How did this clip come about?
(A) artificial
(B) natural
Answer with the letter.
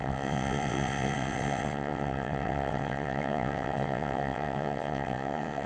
A